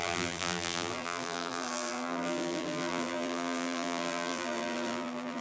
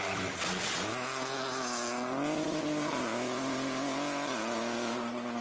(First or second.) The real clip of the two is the second